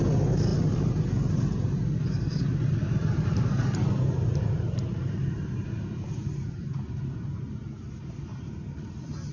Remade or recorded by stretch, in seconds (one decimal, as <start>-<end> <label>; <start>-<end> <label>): 0.0-2.8 recorded; 2.8-7.5 remade; 7.5-8.3 recorded; 8.3-9.3 remade